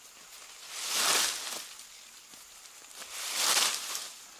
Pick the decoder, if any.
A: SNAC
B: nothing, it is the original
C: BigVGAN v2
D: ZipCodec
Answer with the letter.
B